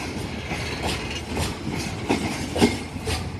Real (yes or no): yes